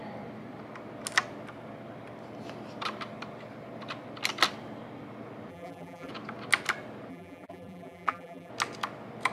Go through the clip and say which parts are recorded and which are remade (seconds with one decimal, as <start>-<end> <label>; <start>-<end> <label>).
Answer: 0.0-5.5 recorded; 5.5-6.1 remade; 6.1-7.1 recorded; 7.1-8.5 remade; 8.5-9.3 recorded